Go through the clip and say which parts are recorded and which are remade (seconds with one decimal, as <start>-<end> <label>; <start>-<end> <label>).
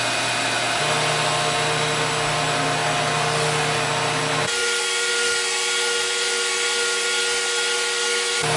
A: 0.0-8.6 recorded